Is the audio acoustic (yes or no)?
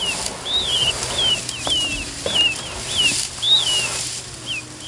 yes